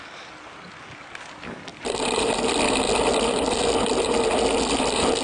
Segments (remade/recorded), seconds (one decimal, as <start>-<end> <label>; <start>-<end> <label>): 0.0-5.2 recorded